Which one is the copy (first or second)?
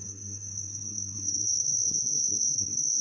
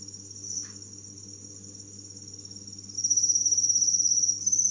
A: first